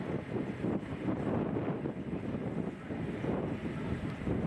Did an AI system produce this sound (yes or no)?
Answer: no